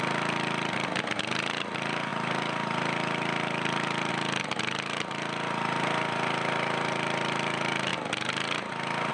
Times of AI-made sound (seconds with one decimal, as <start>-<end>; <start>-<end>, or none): 0.0-7.9